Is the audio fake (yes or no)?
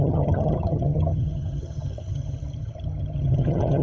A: yes